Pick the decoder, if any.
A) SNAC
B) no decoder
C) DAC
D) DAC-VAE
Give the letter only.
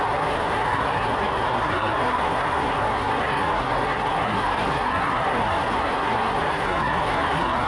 A